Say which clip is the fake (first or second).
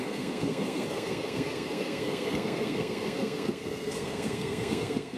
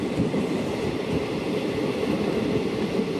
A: first